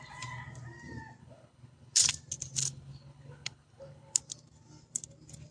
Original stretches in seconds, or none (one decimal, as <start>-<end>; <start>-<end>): 0.0-1.2; 2.1-2.6; 4.2-5.5